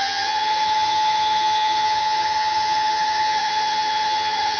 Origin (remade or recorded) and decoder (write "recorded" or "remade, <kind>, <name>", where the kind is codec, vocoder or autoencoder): remade, vocoder, HiFi-GAN